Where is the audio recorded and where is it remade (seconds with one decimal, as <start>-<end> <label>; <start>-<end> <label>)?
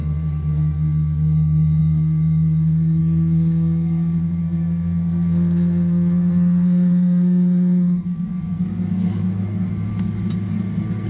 0.0-9.9 remade; 9.9-10.5 recorded; 10.5-11.1 remade